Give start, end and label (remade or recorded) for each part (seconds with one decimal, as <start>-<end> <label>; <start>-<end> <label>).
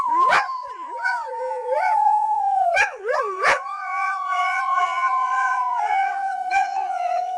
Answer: 0.0-7.4 remade